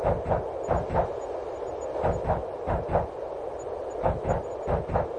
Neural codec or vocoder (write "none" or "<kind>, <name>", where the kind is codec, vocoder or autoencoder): none